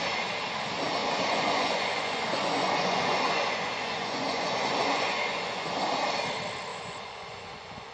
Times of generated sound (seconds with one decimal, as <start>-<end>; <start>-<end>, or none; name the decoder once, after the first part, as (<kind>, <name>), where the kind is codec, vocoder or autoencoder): 1.0-5.7 (vocoder, Vocos); 6.7-7.9